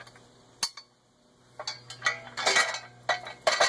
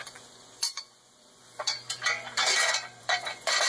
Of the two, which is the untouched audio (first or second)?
first